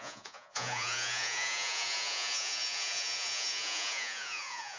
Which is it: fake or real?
fake